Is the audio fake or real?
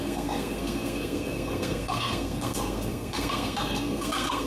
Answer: fake